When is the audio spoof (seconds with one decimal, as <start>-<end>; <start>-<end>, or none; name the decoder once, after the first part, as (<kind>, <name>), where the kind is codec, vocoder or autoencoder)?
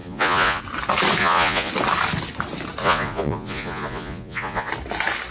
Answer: 0.0-0.6 (vocoder, Vocos); 1.2-1.7; 2.8-4.7